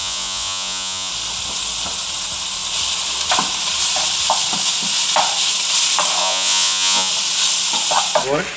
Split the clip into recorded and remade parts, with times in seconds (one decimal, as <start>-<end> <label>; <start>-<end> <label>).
0.0-1.1 remade; 1.1-6.2 recorded; 6.2-7.1 remade; 7.1-8.6 recorded